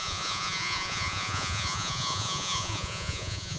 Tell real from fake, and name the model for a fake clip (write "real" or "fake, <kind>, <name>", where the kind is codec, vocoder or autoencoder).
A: fake, vocoder, Vocos